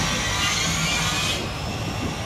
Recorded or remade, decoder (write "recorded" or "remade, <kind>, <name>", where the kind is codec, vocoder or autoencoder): recorded